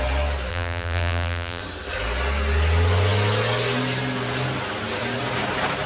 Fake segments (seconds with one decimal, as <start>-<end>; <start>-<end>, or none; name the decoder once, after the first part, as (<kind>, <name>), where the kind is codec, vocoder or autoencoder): 0.5-1.6 (vocoder, BigVGAN v2)